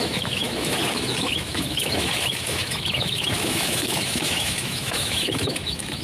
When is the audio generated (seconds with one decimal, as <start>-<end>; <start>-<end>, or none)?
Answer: 0.0-6.0